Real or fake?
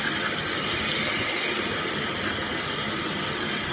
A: real